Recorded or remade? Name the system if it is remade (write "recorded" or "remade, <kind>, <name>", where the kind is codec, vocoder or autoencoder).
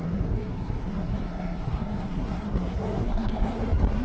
remade, codec, SNAC